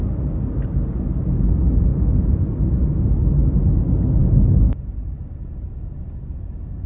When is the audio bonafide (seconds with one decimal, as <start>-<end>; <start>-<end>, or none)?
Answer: 0.0-6.9